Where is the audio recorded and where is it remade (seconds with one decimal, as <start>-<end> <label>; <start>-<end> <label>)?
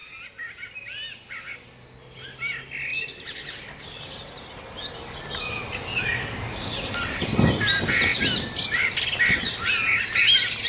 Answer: 0.0-10.7 recorded